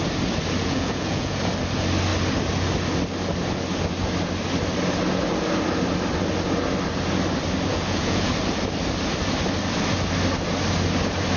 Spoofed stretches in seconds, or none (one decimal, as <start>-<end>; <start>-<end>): 0.6-1.4; 7.7-8.3

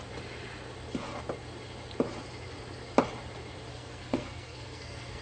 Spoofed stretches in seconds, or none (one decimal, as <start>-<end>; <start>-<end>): 3.7-5.2